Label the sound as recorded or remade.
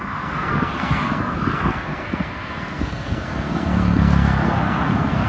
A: remade